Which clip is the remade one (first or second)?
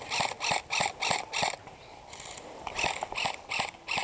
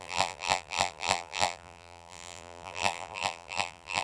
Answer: second